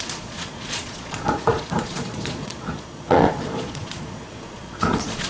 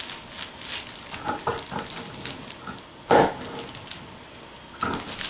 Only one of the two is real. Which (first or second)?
second